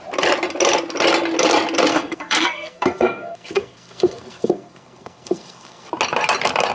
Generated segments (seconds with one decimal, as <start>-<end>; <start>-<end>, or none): 1.9-5.9